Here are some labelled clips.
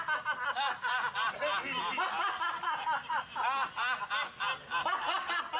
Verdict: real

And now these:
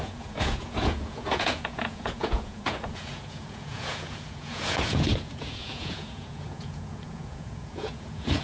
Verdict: fake